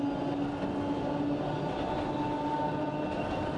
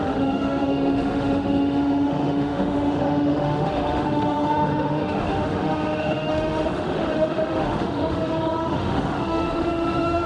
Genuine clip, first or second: first